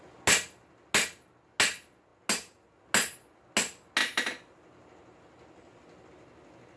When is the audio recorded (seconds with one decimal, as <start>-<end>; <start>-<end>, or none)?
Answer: 0.0-6.8